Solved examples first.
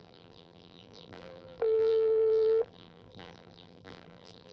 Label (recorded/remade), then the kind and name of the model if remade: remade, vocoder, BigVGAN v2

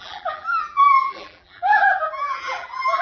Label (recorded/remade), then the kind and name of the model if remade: remade, vocoder, BigVGAN v2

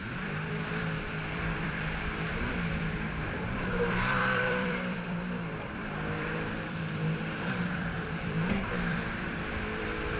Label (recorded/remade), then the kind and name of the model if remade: remade, vocoder, BigVGAN v2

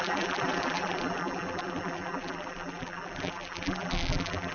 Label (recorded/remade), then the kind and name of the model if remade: remade, vocoder, BigVGAN v2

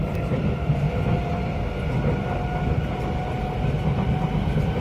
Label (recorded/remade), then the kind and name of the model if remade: recorded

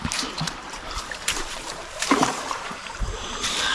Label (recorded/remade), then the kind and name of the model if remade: remade, vocoder, BigVGAN v2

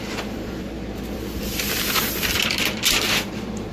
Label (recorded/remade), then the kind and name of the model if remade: remade, vocoder, BigVGAN v2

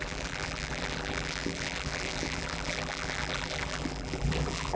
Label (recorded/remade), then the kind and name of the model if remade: remade, vocoder, BigVGAN v2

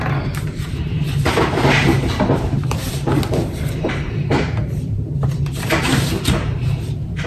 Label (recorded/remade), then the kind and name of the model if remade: remade, vocoder, BigVGAN v2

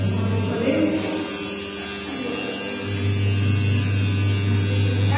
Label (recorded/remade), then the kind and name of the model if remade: recorded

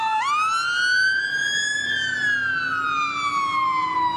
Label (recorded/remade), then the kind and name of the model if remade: recorded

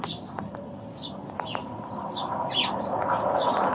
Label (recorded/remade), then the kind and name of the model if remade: recorded